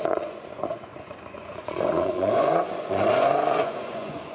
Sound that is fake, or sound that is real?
fake